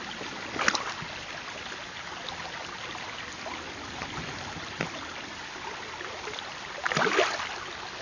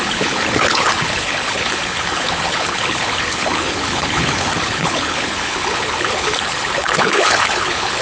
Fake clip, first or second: second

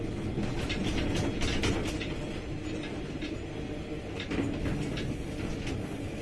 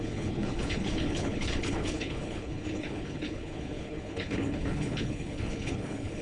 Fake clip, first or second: second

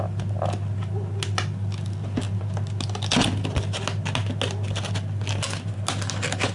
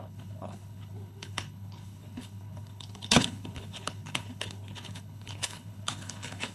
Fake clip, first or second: second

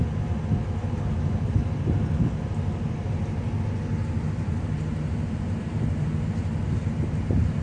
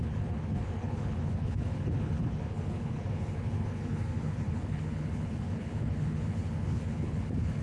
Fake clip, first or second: second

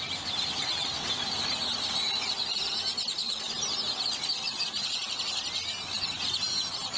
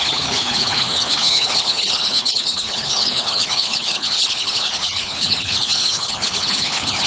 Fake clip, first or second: second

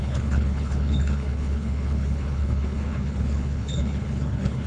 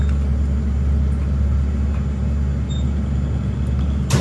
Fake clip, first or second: first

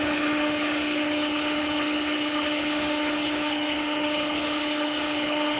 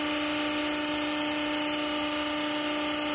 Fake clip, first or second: first